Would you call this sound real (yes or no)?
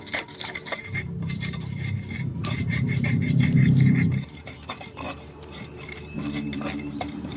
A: no